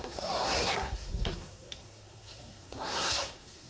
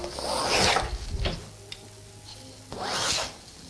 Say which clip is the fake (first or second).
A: first